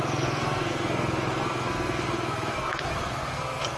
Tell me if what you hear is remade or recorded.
remade